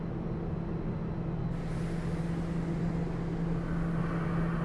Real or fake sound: real